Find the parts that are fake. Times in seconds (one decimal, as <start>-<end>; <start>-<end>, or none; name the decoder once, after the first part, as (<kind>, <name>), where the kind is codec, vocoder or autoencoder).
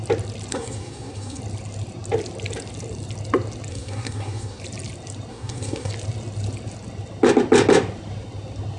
0.5-1.4 (codec, SNAC); 3.7-4.6; 5.3-5.9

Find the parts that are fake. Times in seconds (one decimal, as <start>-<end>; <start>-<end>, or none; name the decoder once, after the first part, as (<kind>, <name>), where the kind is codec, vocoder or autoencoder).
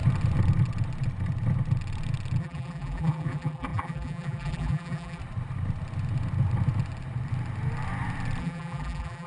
2.4-5.2 (vocoder, BigVGAN v2); 8.4-9.3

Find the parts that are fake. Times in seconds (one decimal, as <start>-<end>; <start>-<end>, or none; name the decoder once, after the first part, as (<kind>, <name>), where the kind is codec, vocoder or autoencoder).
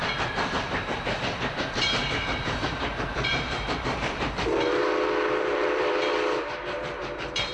0.0-4.8 (vocoder, BigVGAN v2); 5.4-7.5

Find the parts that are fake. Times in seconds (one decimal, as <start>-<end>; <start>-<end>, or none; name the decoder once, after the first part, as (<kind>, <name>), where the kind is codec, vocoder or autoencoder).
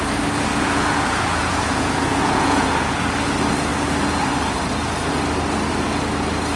0.5-3.1 (vocoder, Vocos)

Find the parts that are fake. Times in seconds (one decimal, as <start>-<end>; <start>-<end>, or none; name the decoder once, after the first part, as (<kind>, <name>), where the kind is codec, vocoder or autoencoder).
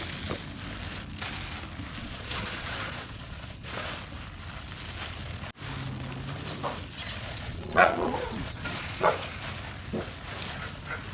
2.0-3.9 (vocoder, Vocos); 7.0-9.1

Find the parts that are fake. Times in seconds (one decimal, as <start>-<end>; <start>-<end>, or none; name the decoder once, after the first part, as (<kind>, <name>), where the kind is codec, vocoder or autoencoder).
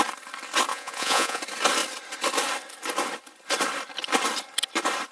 0.7-1.4 (vocoder, Vocos)